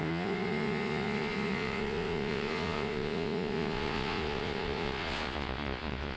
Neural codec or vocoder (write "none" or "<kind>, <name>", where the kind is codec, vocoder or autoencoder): vocoder, Vocos